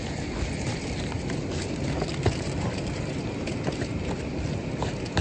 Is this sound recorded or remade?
recorded